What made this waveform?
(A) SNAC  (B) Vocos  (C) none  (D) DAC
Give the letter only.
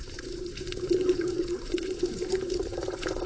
B